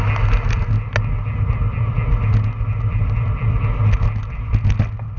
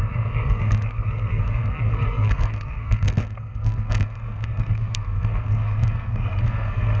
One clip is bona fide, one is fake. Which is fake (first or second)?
second